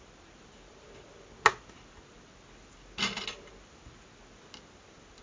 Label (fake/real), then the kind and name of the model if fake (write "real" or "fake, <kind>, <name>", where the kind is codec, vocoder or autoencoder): real